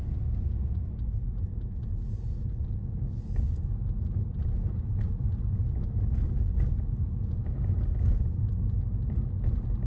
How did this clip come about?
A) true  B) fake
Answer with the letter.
A